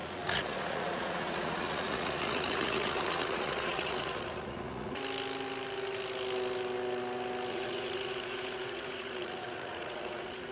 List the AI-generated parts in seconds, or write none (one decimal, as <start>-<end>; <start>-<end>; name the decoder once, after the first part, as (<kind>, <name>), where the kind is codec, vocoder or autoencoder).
0.0-5.0 (vocoder, Vocos); 7.5-10.5